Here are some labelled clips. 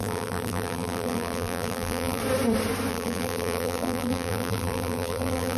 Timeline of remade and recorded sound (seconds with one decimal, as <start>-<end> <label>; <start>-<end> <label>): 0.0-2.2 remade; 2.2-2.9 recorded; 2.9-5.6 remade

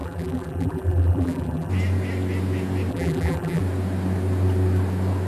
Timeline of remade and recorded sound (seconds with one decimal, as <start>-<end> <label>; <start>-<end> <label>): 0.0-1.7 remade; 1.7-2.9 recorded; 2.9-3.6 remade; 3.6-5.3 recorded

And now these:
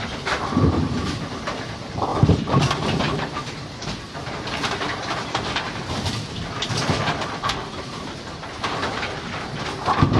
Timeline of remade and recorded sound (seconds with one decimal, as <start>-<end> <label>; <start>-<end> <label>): 0.0-10.2 remade

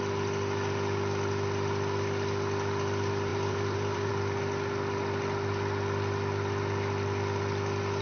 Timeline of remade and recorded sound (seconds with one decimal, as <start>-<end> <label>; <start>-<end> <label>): 0.0-3.3 recorded; 3.3-4.1 remade; 4.1-8.0 recorded

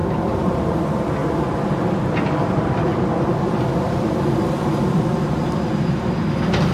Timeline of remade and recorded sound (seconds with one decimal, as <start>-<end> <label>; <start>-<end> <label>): 0.0-0.6 remade; 0.6-6.7 recorded

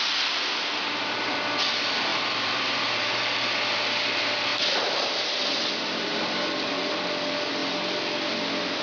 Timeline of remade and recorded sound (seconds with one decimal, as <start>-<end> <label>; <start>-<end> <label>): 0.0-2.1 recorded; 2.1-2.8 remade; 2.8-4.5 recorded; 4.5-7.1 remade; 7.1-8.8 recorded